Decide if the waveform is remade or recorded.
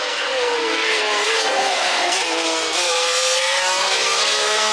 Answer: remade